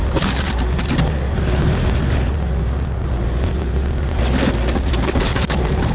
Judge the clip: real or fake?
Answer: real